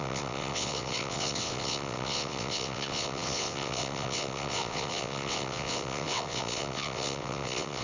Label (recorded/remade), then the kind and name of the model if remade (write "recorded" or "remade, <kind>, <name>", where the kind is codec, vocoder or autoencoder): remade, vocoder, WaveNeXt